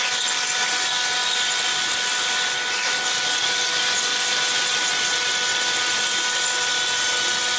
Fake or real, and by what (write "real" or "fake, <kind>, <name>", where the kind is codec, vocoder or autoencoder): real